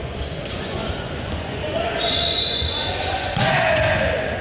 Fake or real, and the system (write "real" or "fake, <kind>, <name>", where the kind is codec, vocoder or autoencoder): fake, vocoder, Vocos